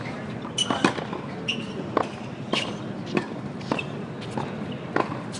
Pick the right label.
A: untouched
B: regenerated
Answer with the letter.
A